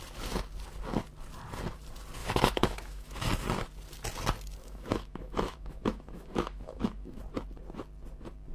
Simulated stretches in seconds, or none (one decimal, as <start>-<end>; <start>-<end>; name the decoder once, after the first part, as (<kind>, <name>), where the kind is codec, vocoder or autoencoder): 2.2-3.3 (autoencoder, DAC-VAE); 4.6-7.2

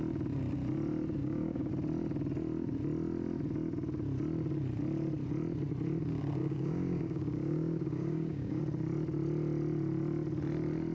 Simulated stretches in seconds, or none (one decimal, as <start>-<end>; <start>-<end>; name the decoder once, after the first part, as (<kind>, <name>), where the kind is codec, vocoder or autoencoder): 1.2-1.7 (codec, DAC); 6.4-8.6

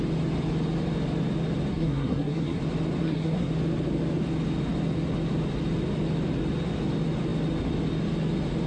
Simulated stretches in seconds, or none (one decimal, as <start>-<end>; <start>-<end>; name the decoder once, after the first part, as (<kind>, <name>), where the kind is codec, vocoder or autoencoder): 1.7-2.6 (codec, SNAC); 3.0-3.5

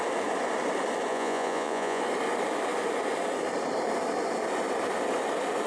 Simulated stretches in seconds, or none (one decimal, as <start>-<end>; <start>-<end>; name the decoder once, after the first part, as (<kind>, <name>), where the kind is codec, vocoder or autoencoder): 1.1-2.0 (vocoder, Vocos)

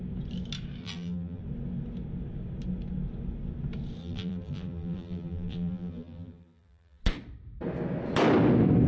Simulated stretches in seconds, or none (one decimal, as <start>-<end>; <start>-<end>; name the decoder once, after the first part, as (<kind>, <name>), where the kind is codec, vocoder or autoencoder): 0.8-1.4 (vocoder, BigVGAN v2); 4.0-7.0

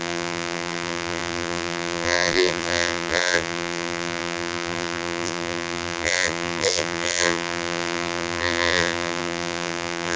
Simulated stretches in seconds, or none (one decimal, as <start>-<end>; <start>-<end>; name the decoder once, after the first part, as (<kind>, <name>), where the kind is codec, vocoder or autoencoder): 0.0-10.2 (vocoder, BigVGAN v2)